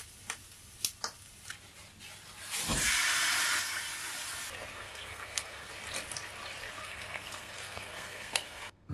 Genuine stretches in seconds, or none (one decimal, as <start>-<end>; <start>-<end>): 0.0-4.7; 5.7-6.8